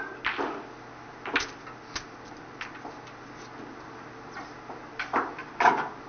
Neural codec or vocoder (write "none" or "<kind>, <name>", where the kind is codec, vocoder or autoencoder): none